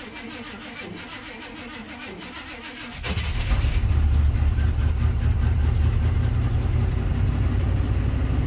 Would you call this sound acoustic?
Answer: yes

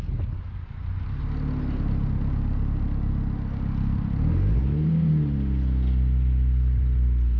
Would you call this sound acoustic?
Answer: yes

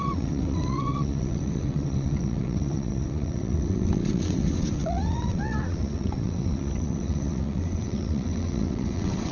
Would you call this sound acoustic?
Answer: no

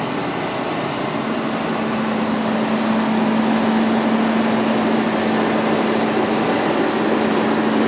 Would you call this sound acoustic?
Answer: yes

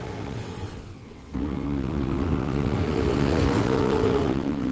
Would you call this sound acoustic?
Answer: no